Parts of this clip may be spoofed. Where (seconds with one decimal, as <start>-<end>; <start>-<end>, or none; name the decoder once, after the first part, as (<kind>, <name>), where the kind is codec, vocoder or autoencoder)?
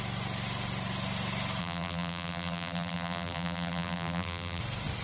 1.6-4.6 (vocoder, BigVGAN v2)